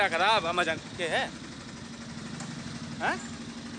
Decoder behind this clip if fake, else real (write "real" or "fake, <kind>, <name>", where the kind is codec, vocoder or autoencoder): real